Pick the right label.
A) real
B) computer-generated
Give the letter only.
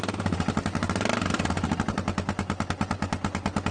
A